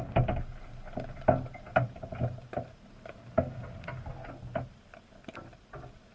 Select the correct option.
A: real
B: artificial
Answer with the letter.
A